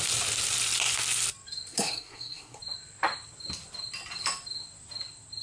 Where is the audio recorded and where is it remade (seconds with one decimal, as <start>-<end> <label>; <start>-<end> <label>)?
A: 0.0-1.7 recorded; 1.7-2.6 remade; 2.6-5.4 recorded